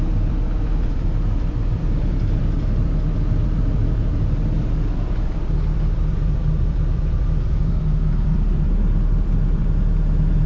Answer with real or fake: fake